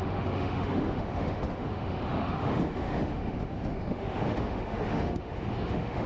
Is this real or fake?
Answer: fake